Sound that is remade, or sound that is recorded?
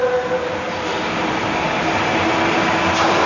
recorded